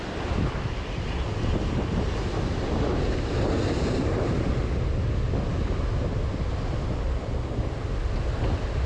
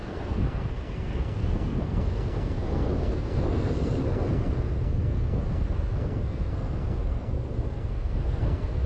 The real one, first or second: first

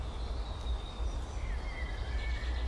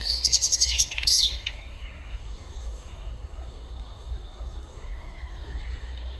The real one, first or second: first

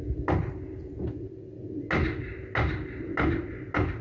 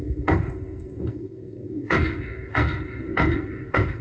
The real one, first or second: first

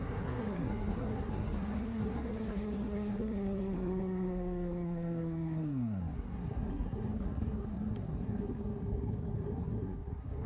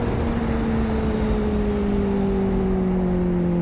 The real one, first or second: second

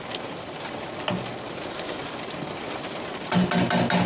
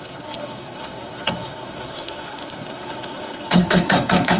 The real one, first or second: first